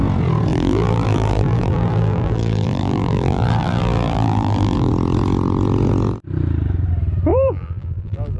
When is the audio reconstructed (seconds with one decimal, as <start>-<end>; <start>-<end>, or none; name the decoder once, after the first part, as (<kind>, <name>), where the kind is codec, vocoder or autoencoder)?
0.5-4.9 (vocoder, BigVGAN v2); 7.3-8.4